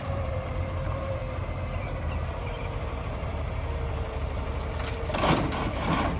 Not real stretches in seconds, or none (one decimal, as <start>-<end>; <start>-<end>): 0.0-1.2; 2.0-6.2